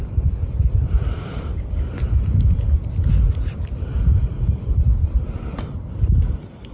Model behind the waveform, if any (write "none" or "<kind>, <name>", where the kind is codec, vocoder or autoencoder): none